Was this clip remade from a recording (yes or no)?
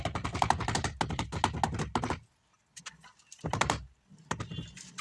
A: no